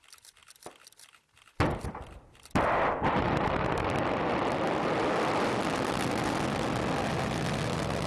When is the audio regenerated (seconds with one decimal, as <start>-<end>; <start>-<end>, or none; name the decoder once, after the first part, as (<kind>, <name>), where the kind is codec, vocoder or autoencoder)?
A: none